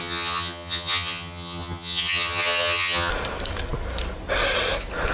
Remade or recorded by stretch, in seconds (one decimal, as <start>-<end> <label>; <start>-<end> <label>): 0.0-3.1 remade; 3.1-5.1 recorded